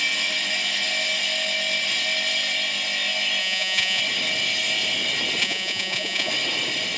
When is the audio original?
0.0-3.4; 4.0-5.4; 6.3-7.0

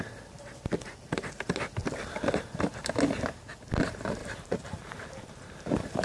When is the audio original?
0.0-4.2